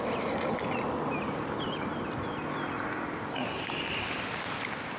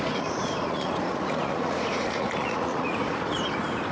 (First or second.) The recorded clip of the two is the first